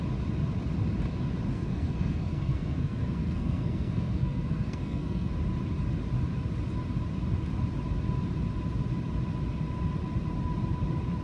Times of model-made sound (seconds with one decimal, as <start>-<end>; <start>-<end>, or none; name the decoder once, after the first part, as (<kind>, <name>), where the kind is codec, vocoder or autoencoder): 1.5-5.3 (codec, SNAC)